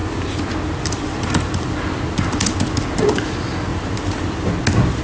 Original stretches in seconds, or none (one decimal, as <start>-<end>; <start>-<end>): 0.0-3.7; 4.5-5.0

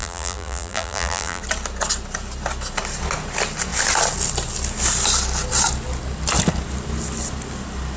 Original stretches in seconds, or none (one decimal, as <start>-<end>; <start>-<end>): 1.4-8.0

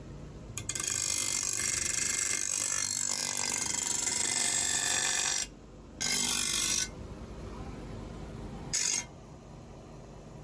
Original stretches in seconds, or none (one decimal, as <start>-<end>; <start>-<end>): 5.4-6.1

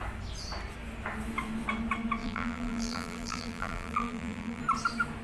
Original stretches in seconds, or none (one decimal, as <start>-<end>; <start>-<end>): 0.0-2.2; 4.6-5.2